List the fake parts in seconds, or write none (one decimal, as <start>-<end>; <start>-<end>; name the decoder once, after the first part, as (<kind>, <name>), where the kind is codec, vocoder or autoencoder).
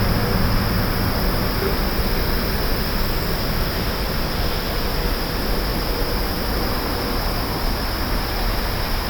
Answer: none